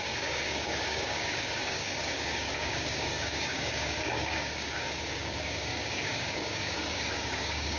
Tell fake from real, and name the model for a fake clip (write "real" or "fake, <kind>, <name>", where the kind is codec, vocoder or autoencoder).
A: fake, codec, DAC